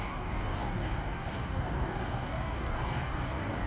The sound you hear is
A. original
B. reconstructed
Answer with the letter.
B